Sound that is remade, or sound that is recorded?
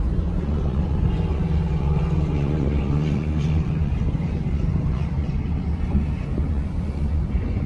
remade